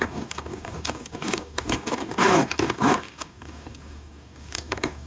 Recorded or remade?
remade